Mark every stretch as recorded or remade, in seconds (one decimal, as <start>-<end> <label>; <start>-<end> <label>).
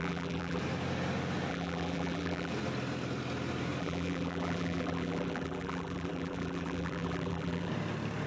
0.0-0.6 remade; 0.6-1.5 recorded; 1.5-2.5 remade; 2.5-3.8 recorded; 3.8-7.7 remade; 7.7-8.3 recorded